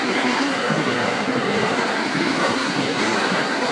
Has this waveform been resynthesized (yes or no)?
yes